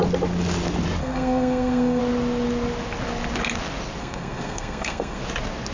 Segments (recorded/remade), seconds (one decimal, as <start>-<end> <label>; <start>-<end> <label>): 0.0-1.0 recorded; 1.0-2.0 remade; 2.0-4.0 recorded; 4.0-5.2 remade; 5.2-5.7 recorded